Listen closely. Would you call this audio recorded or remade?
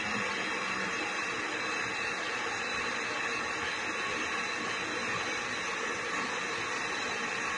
recorded